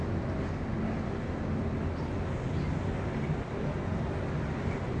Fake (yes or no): no